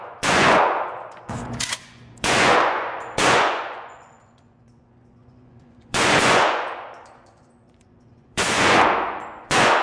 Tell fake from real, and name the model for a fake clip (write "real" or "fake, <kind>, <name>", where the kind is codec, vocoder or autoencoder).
fake, vocoder, Vocos